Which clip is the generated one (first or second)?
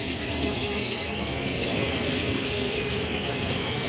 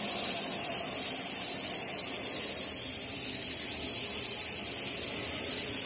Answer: first